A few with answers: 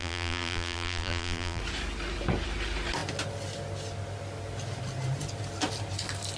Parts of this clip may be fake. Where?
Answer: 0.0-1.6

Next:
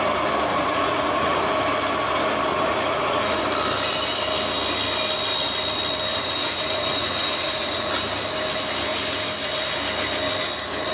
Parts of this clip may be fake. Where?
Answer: 0.5-1.4; 2.5-3.4; 6.1-7.9

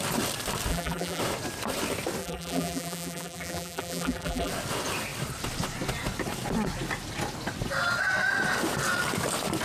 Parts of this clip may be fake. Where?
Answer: 0.7-1.2; 2.2-4.5

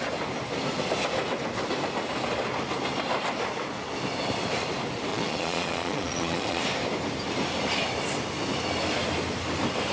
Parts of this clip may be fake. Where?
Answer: 5.1-6.6

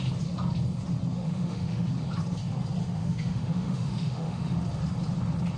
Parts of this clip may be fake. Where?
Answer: 1.1-1.9; 2.8-4.6

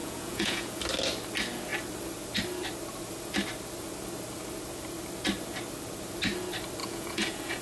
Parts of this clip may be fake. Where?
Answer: 0.0-0.8; 6.8-7.6

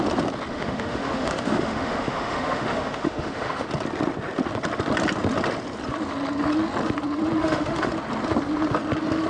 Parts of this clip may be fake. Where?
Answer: 0.5-3.7; 7.4-7.9

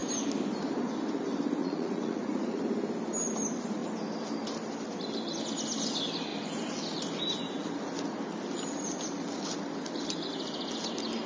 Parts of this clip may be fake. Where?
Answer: 1.6-2.6